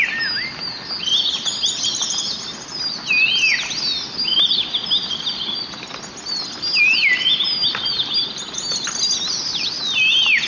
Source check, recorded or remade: recorded